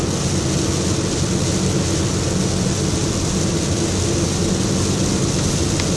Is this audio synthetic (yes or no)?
no